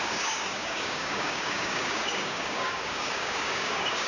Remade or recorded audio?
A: remade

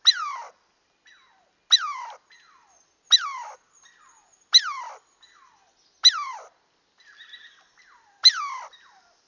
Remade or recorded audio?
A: recorded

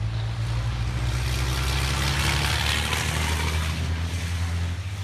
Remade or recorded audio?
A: recorded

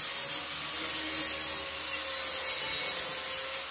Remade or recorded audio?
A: recorded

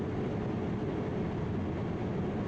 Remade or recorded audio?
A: recorded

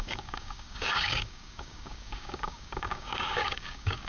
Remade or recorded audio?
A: remade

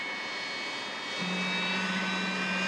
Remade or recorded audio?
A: recorded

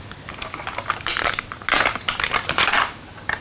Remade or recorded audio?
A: recorded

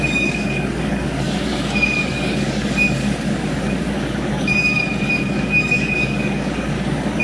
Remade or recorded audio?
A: remade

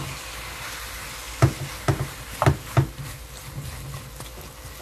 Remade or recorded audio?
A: recorded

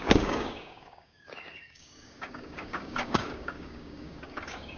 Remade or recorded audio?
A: remade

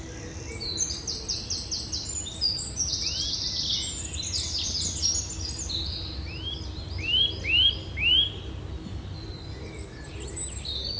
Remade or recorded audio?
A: recorded